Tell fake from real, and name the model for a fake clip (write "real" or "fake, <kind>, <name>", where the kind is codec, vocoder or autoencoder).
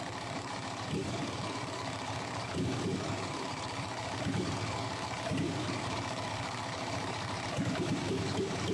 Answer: fake, codec, DAC